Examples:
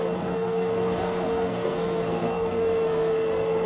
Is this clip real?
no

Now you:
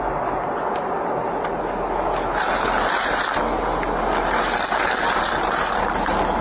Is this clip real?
yes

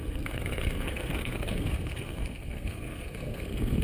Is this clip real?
no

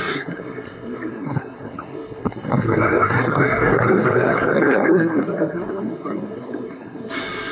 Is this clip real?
no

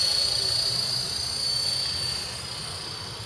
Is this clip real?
yes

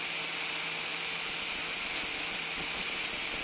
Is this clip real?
yes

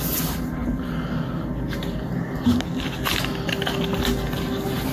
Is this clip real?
yes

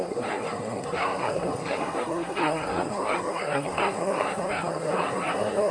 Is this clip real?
no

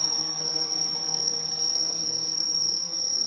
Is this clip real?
no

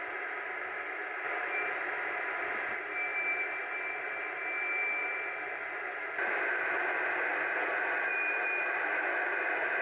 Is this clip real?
yes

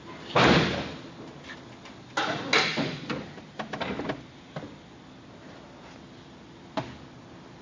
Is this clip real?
yes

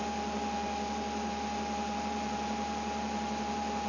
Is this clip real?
yes